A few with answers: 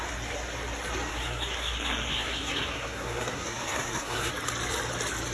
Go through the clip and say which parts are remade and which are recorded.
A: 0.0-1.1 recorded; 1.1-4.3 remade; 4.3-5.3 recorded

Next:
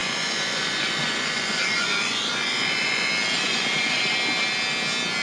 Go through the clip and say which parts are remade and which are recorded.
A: 0.0-3.1 remade; 3.1-3.5 recorded; 3.5-4.0 remade; 4.0-5.2 recorded

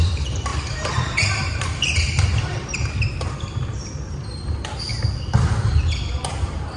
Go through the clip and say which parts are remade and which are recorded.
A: 0.0-4.9 remade; 4.9-6.3 recorded; 6.3-6.8 remade

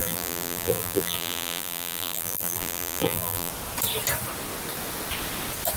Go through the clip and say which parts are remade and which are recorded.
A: 0.0-3.5 remade; 3.5-5.8 recorded

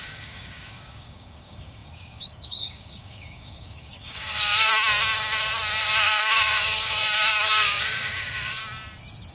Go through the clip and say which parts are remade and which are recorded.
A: 0.0-4.7 remade; 4.7-5.8 recorded; 5.8-8.6 remade; 8.6-9.3 recorded